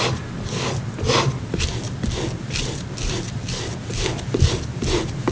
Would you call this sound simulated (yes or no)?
no